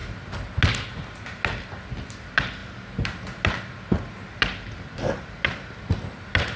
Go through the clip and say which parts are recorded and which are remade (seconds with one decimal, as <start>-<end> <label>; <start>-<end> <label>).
0.0-6.6 recorded